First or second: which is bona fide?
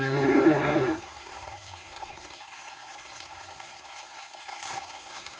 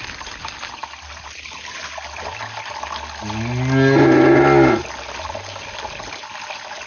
second